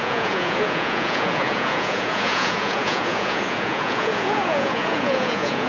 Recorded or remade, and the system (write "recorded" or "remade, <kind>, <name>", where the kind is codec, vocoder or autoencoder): remade, vocoder, Vocos